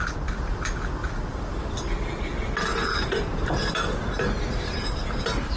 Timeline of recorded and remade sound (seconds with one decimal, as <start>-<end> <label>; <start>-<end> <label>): 0.0-5.6 recorded